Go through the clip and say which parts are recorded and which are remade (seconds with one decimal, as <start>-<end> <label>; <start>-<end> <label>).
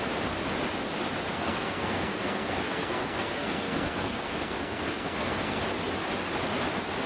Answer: 0.0-1.3 recorded; 1.3-5.6 remade; 5.6-7.1 recorded